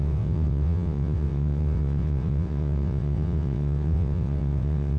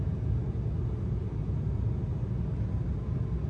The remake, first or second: first